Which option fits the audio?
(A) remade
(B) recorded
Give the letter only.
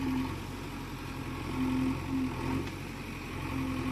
B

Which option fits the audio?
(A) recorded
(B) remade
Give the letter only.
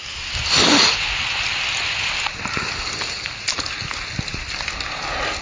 A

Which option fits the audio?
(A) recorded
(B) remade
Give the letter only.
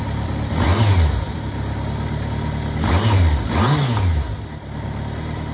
A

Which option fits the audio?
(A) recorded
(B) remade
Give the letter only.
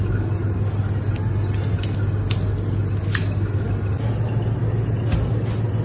A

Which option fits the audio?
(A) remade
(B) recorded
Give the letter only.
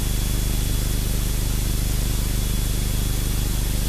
B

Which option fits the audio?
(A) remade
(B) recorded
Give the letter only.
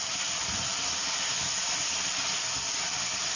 B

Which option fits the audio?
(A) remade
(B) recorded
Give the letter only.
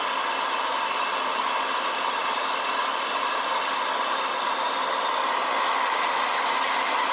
B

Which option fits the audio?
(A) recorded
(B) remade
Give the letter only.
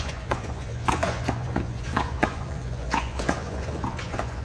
B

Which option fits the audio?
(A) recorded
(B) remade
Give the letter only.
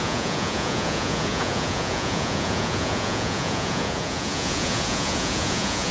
B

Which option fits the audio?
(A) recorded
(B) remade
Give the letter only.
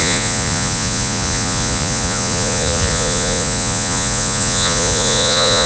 B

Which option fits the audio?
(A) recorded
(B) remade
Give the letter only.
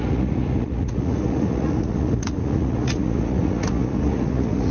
B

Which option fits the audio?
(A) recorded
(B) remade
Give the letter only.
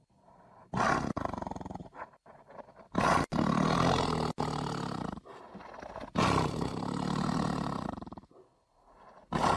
A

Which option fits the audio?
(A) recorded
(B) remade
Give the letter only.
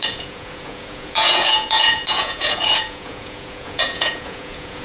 B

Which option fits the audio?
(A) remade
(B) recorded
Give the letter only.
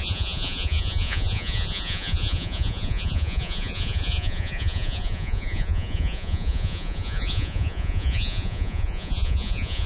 A